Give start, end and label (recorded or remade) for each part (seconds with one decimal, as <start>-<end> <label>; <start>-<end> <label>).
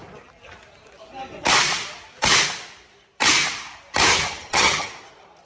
0.0-4.1 recorded; 4.1-4.9 remade; 4.9-5.5 recorded